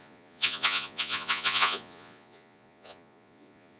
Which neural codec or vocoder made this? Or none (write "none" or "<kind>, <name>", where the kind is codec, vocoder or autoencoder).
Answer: vocoder, Vocos